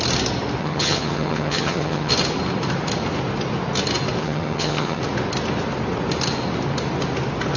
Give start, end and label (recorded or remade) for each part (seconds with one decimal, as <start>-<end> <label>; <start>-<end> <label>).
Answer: 0.0-0.6 recorded; 0.6-2.1 remade; 2.1-4.2 recorded; 4.2-5.0 remade; 5.0-7.6 recorded